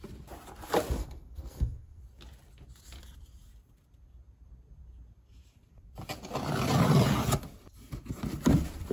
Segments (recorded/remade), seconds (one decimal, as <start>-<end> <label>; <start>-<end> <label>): 0.0-1.0 recorded; 1.0-2.0 remade; 2.0-8.9 recorded